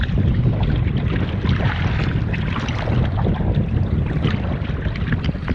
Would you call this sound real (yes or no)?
yes